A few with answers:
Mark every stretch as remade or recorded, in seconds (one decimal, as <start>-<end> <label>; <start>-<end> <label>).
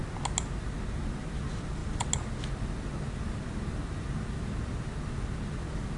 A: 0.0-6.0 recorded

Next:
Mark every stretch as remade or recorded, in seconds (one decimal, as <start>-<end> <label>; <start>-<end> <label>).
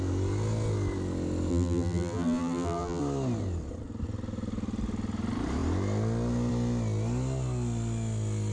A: 0.0-1.5 recorded; 1.5-3.0 remade; 3.0-8.5 recorded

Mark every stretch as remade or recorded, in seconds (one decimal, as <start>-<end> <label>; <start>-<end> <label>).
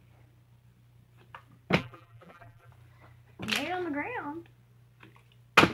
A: 0.0-1.8 recorded; 1.8-2.7 remade; 2.7-5.7 recorded